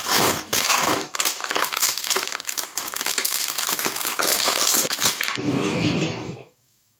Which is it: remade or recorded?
remade